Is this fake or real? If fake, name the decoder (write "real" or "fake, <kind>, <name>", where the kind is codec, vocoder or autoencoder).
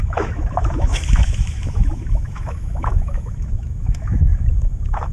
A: fake, autoencoder, DAC-VAE